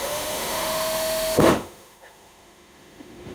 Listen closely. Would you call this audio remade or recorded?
remade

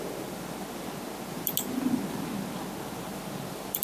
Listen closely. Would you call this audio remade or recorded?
recorded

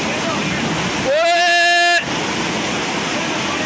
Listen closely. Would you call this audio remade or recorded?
recorded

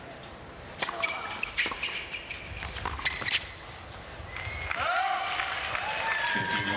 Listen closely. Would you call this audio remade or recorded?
recorded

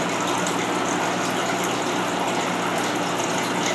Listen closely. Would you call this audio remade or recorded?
recorded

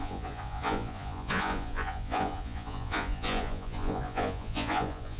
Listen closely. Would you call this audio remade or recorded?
remade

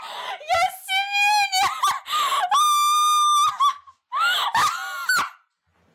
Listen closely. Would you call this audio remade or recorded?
recorded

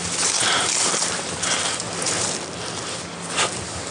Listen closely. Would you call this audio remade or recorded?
recorded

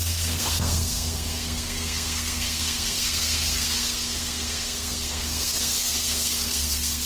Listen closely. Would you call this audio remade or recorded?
remade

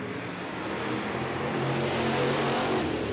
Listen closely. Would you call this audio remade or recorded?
recorded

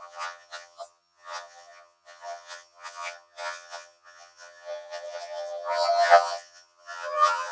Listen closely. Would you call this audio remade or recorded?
remade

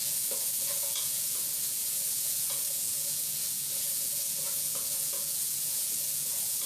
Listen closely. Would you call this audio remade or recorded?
remade